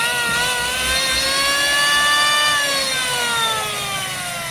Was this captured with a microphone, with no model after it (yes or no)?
yes